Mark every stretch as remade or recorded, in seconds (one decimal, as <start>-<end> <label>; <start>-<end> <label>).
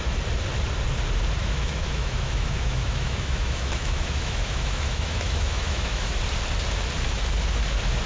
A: 0.0-1.4 recorded; 1.4-6.1 remade; 6.1-8.1 recorded